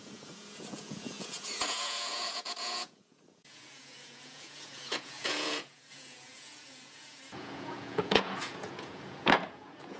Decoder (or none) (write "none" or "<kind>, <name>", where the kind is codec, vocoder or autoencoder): vocoder, Vocos